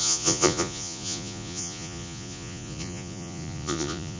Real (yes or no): no